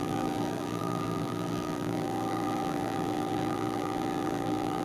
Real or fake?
fake